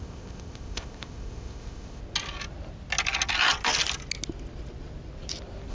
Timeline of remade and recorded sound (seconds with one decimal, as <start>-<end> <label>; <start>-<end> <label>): 0.0-2.0 remade; 2.0-5.7 recorded